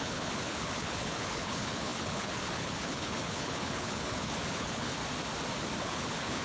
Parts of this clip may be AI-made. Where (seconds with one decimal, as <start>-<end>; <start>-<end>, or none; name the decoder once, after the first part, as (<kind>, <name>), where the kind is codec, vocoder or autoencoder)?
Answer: 0.0-5.0 (codec, HILCodec); 5.8-6.4